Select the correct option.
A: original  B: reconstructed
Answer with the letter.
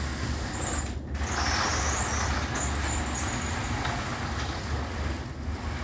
A